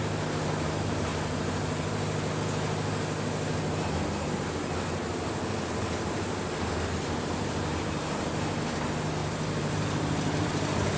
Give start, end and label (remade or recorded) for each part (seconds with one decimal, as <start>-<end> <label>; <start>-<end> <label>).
0.0-9.2 recorded; 9.2-10.5 remade; 10.5-11.0 recorded

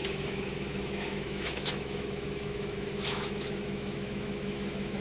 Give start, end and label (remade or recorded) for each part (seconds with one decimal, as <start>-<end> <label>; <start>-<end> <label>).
0.0-5.0 remade

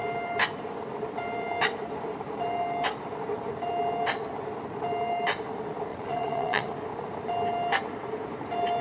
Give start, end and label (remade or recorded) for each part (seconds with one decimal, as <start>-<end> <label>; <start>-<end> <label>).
0.0-5.9 recorded; 5.9-6.7 remade; 6.7-8.8 recorded